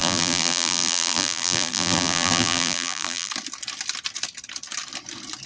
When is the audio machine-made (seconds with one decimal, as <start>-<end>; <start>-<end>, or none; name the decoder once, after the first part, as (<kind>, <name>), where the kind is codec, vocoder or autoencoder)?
0.0-3.3 (vocoder, BigVGAN v2)